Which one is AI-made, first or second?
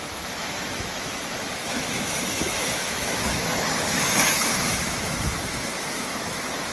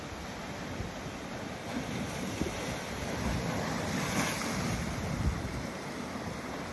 first